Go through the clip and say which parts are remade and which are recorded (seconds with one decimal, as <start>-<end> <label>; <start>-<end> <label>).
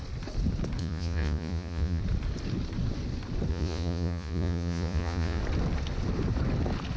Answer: 0.0-0.8 recorded; 0.8-2.0 remade; 2.0-3.5 recorded; 3.5-5.4 remade; 5.4-7.0 recorded